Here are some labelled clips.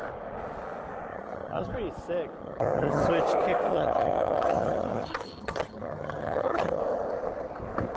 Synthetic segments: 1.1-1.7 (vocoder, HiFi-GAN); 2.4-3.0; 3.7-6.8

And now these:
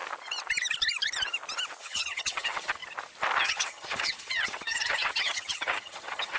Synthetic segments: 1.8-2.8 (vocoder, HiFi-GAN); 3.4-6.4

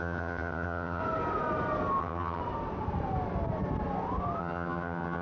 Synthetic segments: 0.0-1.0 (vocoder, HiFi-GAN); 2.0-2.4; 4.4-5.2